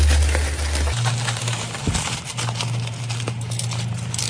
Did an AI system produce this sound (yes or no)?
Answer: no